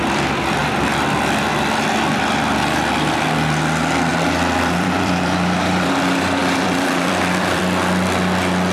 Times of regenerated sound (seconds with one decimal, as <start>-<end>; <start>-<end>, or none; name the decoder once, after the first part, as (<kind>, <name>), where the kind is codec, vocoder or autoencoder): 0.6-1.5 (vocoder, BigVGAN v2); 4.1-5.9; 6.4-7.6

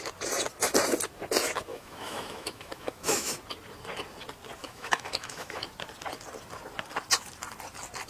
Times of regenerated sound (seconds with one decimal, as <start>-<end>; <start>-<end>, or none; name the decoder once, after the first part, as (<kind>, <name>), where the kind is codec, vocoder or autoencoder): 1.7-3.3 (autoencoder, DAC-VAE); 4.6-5.6